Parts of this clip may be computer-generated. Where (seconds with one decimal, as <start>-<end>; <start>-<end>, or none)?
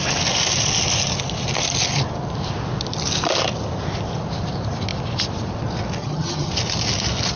6.0-6.5